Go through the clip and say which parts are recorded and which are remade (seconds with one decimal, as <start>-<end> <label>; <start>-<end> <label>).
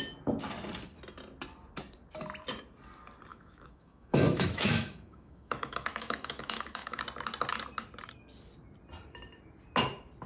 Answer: 0.0-3.3 recorded; 3.3-7.0 remade; 7.0-10.3 recorded